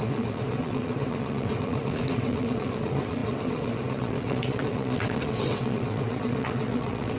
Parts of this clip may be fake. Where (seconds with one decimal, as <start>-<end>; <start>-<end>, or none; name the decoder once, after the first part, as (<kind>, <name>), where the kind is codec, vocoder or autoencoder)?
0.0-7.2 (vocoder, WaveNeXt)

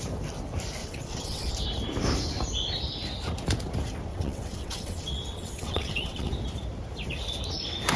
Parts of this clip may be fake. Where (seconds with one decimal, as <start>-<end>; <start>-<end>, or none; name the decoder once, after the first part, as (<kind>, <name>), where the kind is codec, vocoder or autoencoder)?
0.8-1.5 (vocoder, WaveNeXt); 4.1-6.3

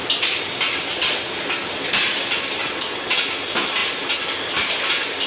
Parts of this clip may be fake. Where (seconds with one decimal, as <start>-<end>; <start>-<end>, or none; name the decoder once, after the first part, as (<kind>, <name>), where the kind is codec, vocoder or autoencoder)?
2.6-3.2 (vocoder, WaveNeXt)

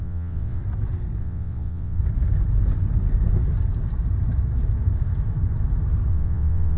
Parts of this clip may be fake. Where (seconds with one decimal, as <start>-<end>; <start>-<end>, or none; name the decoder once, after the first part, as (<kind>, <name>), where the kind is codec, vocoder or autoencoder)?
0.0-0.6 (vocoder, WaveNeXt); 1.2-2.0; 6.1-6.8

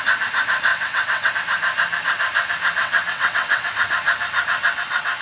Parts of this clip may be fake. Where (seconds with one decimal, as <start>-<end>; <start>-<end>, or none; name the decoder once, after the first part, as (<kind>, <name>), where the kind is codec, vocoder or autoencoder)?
0.7-1.3 (vocoder, WaveNeXt); 2.8-3.7

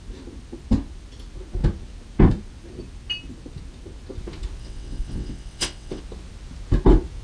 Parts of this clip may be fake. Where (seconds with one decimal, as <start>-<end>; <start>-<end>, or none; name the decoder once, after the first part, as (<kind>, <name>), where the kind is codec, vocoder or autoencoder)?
4.6-6.0 (vocoder, WaveNeXt)

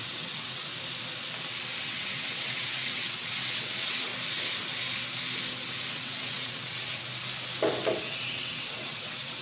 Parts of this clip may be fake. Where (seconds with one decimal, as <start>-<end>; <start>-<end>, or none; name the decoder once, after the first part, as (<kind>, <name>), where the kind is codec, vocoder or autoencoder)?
0.0-0.7 (vocoder, WaveNeXt); 1.8-4.1; 5.9-7.1; 8.0-9.4